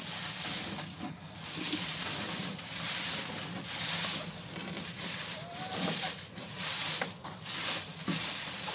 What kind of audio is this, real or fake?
fake